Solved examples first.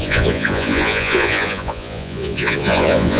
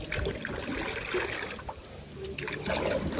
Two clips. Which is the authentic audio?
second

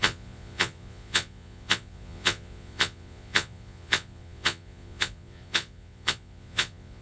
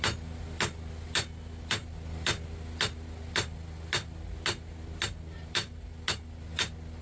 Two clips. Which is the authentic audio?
second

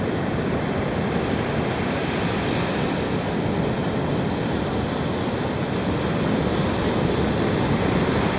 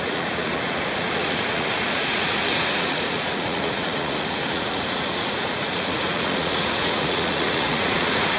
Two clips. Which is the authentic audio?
first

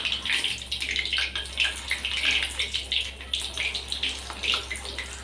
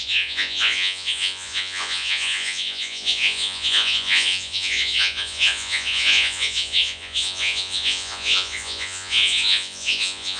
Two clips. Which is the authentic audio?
first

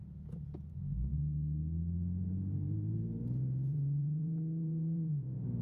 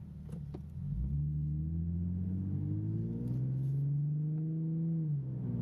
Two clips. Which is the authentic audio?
second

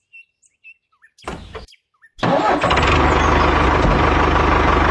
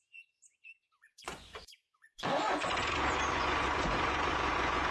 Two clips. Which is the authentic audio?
first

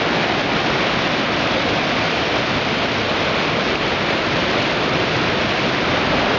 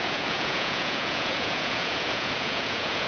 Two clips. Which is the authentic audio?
first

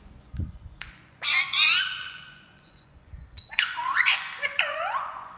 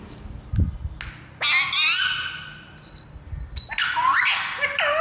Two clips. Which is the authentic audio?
second